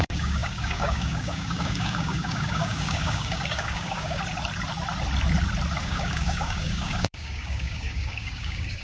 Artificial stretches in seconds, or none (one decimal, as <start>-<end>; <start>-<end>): 0.0-4.2; 5.8-8.8

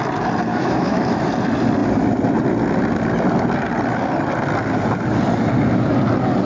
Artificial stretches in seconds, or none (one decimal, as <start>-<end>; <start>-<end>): 0.5-1.3

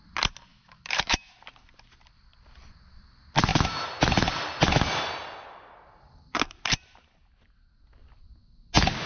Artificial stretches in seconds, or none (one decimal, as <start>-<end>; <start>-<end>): 0.5-1.3

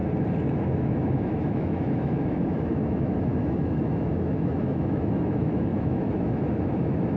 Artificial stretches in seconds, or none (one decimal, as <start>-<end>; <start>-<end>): 0.7-7.2